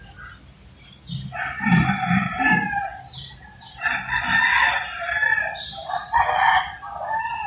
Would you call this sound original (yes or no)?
yes